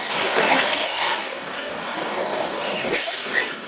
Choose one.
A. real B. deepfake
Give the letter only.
B